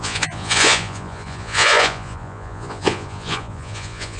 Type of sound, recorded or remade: remade